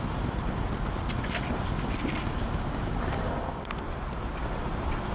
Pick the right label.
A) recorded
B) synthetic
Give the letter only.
A